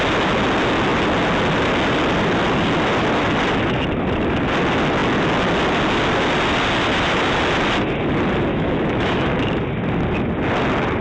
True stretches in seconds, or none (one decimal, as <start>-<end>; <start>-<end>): 0.0-8.5; 9.5-11.0